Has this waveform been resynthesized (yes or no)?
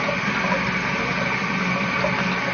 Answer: no